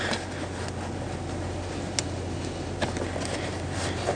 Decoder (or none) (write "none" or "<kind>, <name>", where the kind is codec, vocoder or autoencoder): none